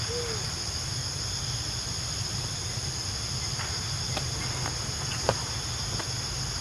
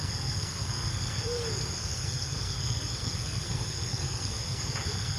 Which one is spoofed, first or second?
second